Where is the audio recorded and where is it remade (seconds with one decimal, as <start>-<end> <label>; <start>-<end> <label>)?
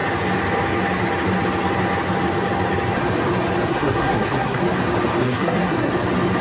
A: 0.0-3.7 recorded; 3.7-4.6 remade; 4.6-5.2 recorded; 5.2-5.9 remade; 5.9-6.4 recorded